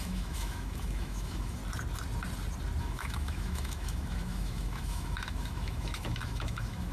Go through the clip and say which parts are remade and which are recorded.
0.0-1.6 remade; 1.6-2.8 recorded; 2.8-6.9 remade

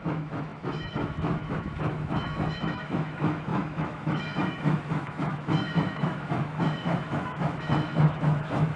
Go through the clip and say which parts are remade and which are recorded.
0.0-8.8 remade

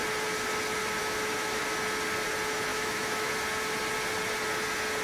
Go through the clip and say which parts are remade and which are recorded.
0.0-1.0 recorded; 1.0-1.6 remade; 1.6-2.7 recorded; 2.7-3.3 remade; 3.3-5.0 recorded